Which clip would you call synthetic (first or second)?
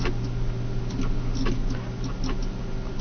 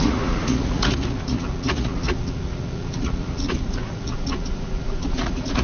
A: second